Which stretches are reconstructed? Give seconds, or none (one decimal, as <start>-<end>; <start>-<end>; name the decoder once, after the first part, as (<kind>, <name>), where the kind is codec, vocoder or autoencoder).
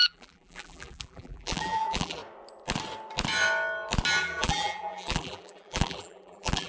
0.0-2.2 (vocoder, BigVGAN v2); 4.2-6.7